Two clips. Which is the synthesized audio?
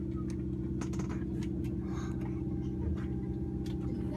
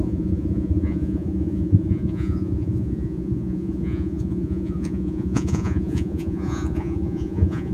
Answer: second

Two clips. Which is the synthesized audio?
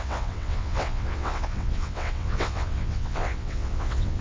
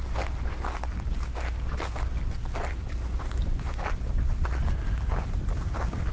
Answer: first